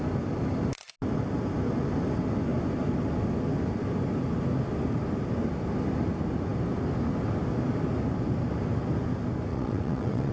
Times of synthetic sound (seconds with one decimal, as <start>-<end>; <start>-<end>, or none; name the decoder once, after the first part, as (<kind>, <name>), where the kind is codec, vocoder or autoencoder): 9.5-10.3 (vocoder, WaveNeXt)